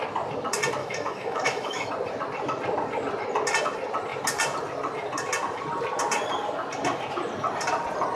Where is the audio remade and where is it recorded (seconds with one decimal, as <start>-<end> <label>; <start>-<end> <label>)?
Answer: 0.0-0.8 recorded; 0.8-1.9 remade; 1.9-8.2 recorded